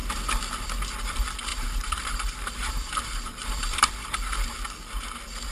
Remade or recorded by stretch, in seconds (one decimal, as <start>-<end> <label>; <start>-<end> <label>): 0.0-1.5 recorded; 1.5-3.9 remade; 3.9-5.5 recorded